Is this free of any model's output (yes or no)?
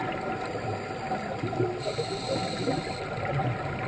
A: yes